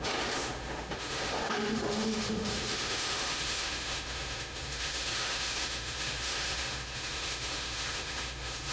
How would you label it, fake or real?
fake